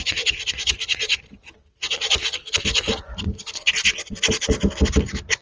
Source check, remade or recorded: recorded